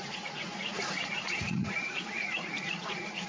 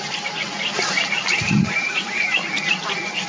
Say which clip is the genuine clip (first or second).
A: second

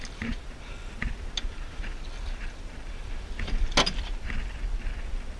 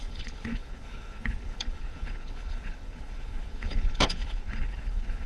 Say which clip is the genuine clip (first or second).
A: first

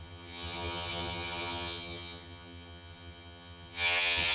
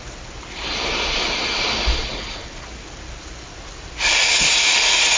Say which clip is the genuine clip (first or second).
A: second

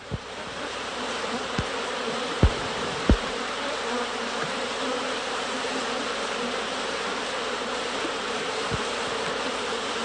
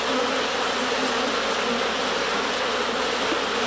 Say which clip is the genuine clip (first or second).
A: second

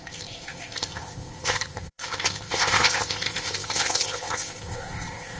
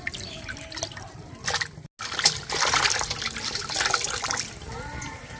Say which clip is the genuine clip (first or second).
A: second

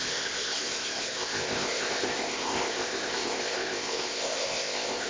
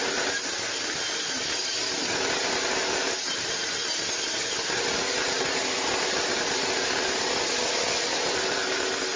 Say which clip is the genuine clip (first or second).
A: second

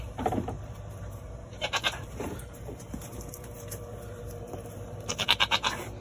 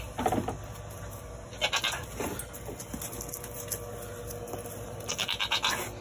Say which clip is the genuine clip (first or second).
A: second